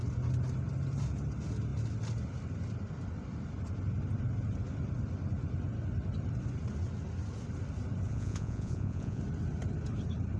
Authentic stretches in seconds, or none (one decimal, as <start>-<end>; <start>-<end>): 0.0-8.1; 9.2-10.4